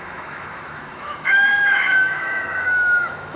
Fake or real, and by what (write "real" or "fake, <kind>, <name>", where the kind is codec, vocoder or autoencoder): fake, autoencoder, DAC-VAE